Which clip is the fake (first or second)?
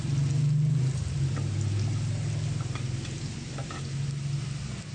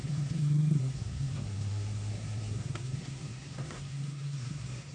second